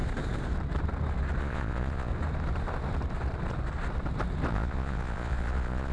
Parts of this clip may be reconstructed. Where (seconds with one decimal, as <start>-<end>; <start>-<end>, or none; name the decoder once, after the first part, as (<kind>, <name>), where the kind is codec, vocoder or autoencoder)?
1.4-2.1 (vocoder, Vocos); 4.5-5.9